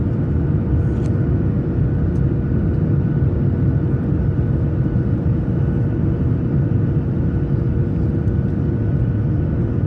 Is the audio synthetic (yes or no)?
no